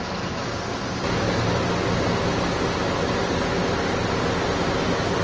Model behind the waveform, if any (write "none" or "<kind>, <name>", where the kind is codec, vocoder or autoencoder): none